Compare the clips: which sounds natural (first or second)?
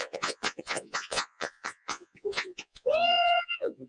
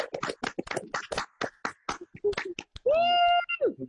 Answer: second